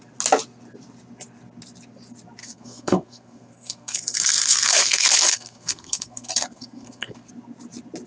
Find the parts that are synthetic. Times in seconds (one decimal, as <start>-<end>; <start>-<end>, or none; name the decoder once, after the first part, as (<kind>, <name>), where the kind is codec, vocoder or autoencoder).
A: 2.4-7.3 (codec, SNAC)